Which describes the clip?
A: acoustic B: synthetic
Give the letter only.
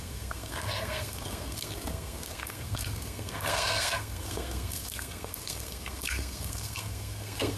B